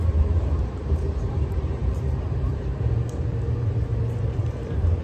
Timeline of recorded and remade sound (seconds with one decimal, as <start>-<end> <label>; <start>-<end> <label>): 0.0-5.0 remade